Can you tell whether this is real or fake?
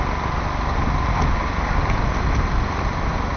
real